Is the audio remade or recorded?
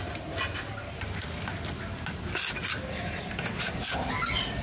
recorded